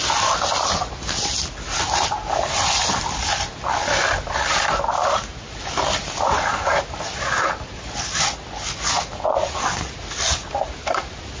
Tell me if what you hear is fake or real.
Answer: real